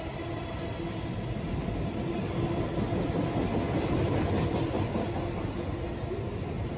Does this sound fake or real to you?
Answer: real